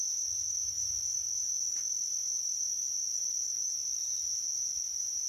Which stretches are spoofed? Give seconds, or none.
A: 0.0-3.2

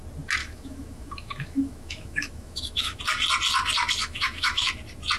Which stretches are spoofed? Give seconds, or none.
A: 0.4-3.0; 4.0-4.7